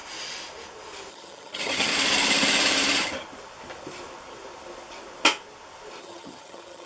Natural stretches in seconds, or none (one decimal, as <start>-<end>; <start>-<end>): 0.0-1.1; 1.9-6.0